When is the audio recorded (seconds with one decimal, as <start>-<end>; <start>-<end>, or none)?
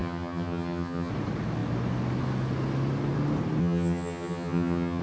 1.1-3.6